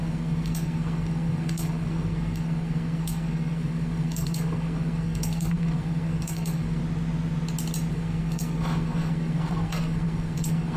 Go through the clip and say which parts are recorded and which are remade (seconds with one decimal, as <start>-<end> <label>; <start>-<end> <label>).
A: 0.0-6.8 remade; 6.8-7.9 recorded; 7.9-10.8 remade

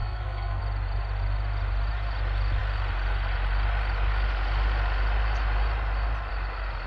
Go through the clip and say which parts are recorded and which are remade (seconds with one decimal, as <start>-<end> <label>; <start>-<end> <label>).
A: 0.0-0.6 remade; 0.6-6.9 recorded

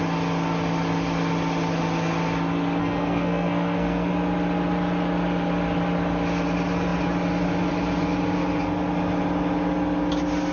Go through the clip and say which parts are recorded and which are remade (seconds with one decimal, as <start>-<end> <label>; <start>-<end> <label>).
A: 0.0-2.8 recorded; 2.8-4.1 remade; 4.1-10.5 recorded